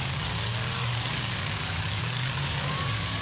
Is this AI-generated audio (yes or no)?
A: yes